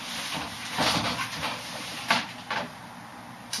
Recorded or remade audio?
recorded